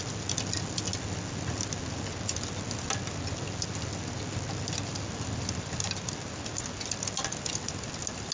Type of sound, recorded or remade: recorded